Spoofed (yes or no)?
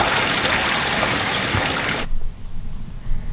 no